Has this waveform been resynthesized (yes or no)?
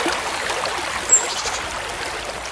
no